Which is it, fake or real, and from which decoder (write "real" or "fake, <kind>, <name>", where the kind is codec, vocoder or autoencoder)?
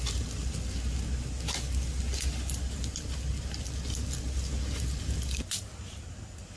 real